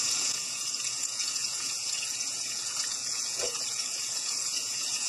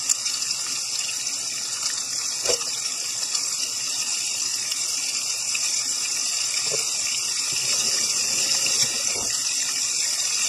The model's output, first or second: first